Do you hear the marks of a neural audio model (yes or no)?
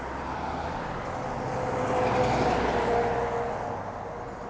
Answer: no